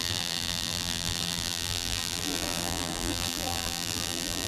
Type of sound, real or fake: fake